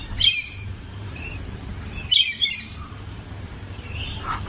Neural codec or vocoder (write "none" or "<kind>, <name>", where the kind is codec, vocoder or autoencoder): vocoder, BigVGAN v2